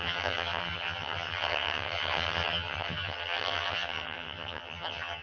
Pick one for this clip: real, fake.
fake